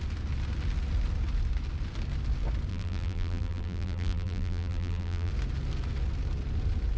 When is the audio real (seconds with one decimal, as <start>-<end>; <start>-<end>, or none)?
0.0-2.7; 5.3-7.0